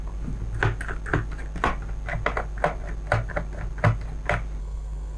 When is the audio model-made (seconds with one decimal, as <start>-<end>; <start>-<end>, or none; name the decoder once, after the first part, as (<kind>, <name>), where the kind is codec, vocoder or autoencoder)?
4.6-5.2 (codec, SNAC)